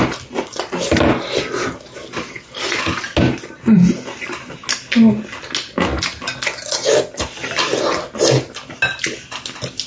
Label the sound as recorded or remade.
recorded